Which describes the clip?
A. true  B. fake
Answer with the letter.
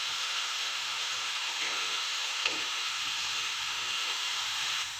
B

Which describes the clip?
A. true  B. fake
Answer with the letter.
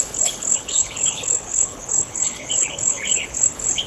B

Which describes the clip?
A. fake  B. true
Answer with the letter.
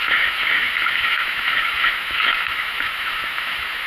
A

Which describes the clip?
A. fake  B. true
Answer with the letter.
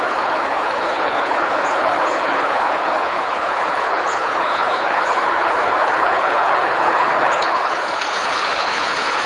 A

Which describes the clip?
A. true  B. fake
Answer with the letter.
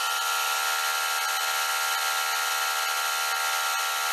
A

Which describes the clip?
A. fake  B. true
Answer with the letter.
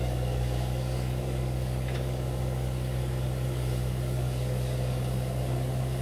A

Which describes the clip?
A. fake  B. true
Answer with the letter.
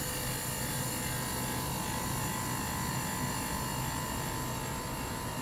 B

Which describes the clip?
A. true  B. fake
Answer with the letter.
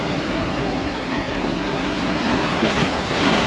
B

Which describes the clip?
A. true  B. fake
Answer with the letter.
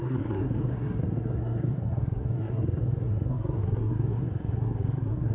B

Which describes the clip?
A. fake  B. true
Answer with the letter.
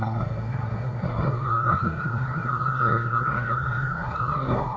A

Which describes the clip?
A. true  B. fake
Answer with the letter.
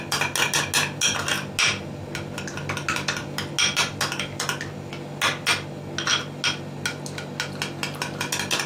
A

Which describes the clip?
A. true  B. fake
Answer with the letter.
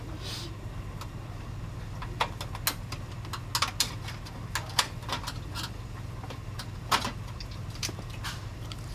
A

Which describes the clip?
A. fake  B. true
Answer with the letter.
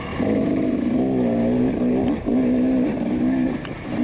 A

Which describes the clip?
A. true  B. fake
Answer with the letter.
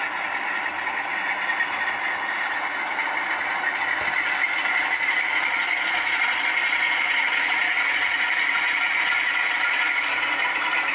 A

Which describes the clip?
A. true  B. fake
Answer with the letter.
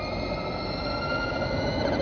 A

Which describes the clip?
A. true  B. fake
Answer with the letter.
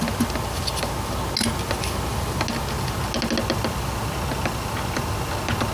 A